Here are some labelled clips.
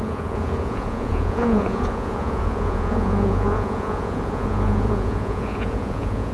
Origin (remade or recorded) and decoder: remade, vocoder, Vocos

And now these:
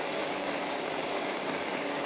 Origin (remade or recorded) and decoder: remade, codec, DAC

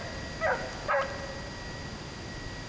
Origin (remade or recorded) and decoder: recorded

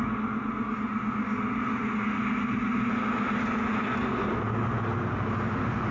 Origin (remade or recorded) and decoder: recorded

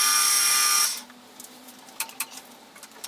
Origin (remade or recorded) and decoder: recorded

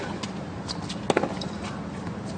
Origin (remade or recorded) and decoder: recorded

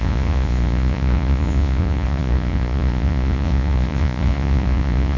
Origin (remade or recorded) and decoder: remade, vocoder, Vocos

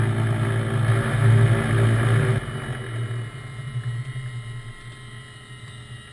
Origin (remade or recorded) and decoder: recorded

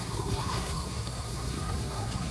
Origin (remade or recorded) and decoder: remade, codec, SNAC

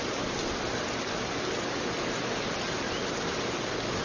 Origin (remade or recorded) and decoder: recorded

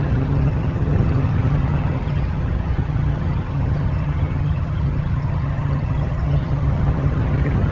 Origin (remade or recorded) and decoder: remade, vocoder, HiFi-GAN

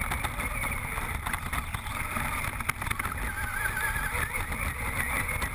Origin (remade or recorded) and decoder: recorded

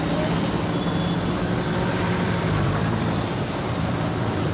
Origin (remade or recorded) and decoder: remade, vocoder, BigVGAN v2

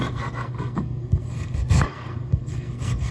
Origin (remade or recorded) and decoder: remade, codec, SNAC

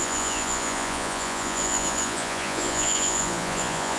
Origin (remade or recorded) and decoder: remade, vocoder, Vocos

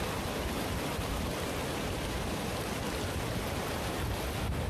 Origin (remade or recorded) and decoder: recorded